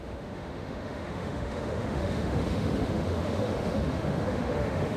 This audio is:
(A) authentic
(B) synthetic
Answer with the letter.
B